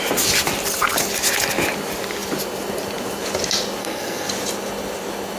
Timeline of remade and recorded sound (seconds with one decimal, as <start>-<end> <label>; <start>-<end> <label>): 0.0-3.8 recorded; 3.8-4.3 remade; 4.3-5.4 recorded